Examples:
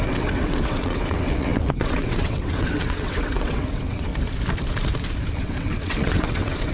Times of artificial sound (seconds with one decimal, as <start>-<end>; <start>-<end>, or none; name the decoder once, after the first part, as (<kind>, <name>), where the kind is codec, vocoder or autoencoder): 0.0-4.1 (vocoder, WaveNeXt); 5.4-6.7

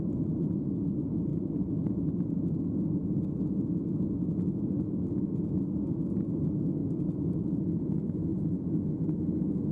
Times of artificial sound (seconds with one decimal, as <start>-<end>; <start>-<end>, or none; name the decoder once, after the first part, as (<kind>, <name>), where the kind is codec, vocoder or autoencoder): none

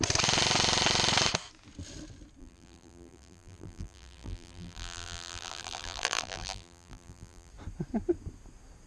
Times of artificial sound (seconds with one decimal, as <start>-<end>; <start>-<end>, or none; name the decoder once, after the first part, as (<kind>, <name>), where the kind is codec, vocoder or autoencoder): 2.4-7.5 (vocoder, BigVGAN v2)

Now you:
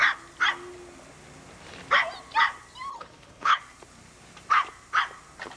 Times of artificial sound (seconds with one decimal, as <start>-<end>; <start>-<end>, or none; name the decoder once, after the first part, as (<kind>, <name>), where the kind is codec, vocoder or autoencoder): 2.9-3.6 (codec, HILCodec)

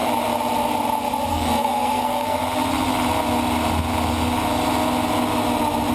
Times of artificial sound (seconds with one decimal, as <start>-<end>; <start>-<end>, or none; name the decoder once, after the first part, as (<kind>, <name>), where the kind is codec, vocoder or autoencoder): 1.3-2.4 (codec, SNAC)